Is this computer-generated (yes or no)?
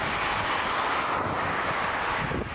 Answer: no